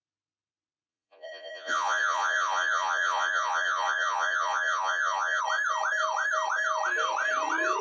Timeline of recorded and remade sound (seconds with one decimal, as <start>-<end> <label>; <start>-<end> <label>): 0.0-0.9 recorded; 0.9-5.4 remade; 5.4-7.8 recorded